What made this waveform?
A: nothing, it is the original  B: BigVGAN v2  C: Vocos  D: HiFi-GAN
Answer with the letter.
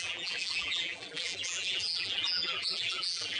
B